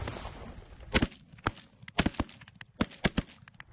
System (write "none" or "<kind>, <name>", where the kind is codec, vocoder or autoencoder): none